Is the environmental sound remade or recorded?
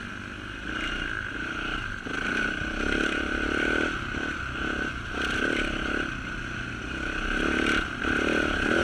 recorded